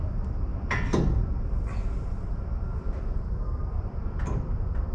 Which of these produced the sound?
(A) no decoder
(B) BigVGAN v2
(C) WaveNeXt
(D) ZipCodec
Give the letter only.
A